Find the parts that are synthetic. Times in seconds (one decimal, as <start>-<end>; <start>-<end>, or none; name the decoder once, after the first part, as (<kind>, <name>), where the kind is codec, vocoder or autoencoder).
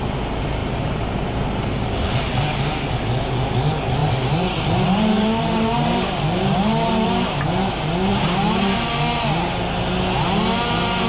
0.6-2.0 (vocoder, BigVGAN v2); 4.0-7.3; 8.1-8.7